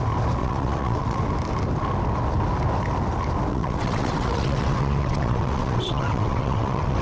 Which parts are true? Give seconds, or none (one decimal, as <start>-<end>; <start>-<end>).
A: 0.0-0.4; 1.2-3.5